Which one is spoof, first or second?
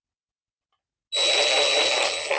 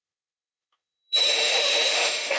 second